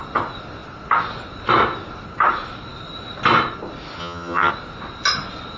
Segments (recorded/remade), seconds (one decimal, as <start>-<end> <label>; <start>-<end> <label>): 0.0-4.0 recorded; 4.0-4.5 remade; 4.5-5.6 recorded